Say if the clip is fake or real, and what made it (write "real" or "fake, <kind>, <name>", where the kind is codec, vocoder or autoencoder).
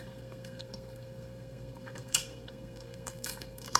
fake, codec, SNAC